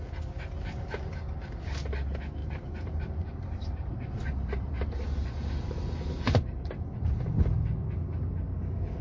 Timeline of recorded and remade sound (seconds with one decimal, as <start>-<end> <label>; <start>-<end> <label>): 0.0-2.4 recorded; 2.4-6.9 remade; 6.9-9.0 recorded